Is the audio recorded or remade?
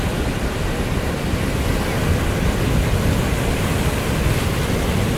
recorded